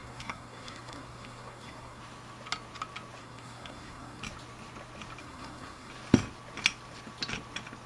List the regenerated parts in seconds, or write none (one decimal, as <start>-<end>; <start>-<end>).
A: 0.0-2.0; 3.2-4.2; 5.2-5.9